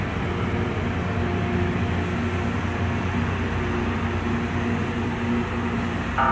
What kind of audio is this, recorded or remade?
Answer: recorded